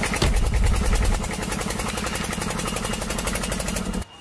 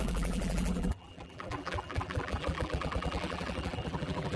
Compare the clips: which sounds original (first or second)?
first